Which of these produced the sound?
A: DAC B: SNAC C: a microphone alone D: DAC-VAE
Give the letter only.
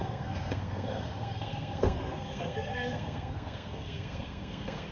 B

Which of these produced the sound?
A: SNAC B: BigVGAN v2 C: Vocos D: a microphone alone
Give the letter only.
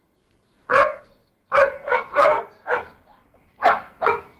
A